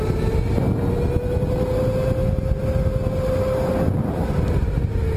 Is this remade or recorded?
recorded